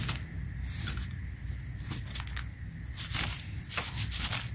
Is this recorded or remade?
recorded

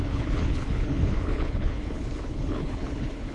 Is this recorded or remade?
remade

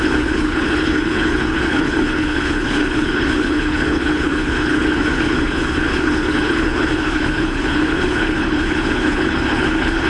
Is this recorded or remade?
remade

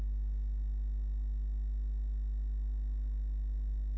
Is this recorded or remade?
recorded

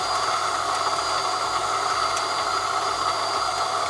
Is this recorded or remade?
recorded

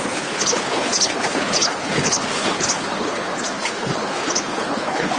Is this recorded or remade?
remade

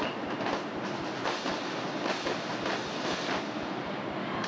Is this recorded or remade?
recorded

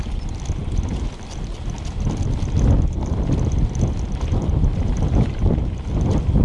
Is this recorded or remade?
recorded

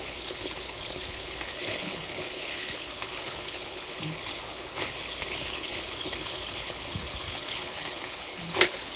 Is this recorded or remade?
remade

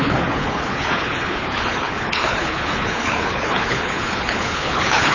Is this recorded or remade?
remade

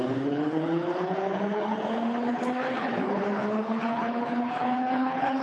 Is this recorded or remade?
remade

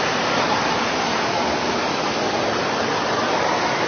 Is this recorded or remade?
recorded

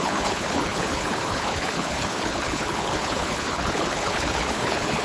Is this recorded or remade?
remade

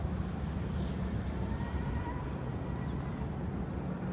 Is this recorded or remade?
recorded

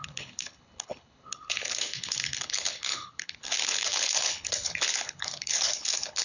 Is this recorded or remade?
remade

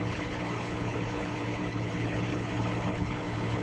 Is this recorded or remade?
remade